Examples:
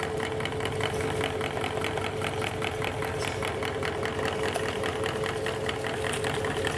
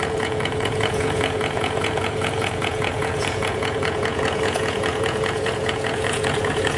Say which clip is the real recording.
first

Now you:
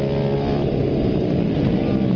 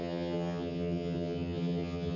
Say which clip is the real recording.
first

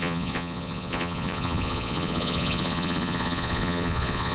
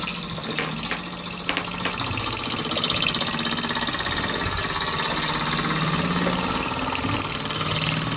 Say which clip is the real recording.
second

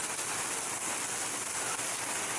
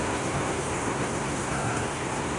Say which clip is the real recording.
first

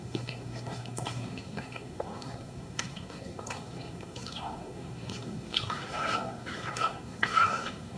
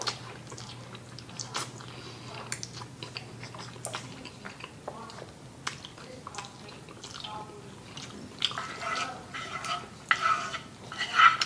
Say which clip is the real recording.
second